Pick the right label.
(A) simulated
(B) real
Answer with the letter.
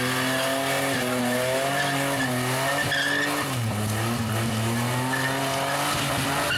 B